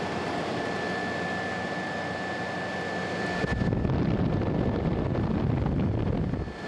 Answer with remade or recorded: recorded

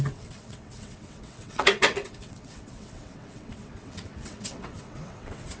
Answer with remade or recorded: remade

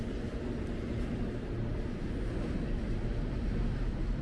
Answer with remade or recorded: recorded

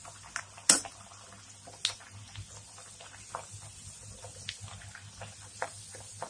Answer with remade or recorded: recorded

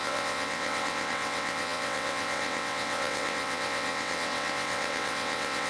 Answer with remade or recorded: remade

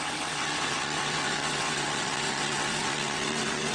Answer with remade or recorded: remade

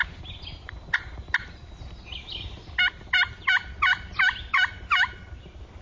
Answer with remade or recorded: recorded